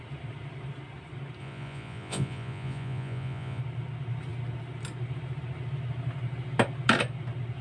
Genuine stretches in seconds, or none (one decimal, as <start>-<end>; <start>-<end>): 0.0-1.4; 3.6-7.6